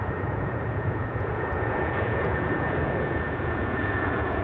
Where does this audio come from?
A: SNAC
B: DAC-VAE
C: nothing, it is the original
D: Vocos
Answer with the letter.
D